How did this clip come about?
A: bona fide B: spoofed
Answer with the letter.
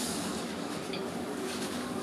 B